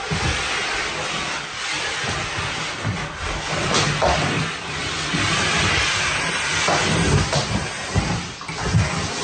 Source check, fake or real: real